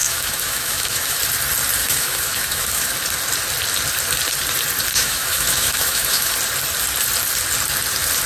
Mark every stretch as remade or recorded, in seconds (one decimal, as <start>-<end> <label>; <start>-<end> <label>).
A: 0.0-1.2 remade; 1.2-1.8 recorded; 1.8-2.9 remade; 2.9-4.9 recorded; 4.9-6.3 remade; 6.3-8.3 recorded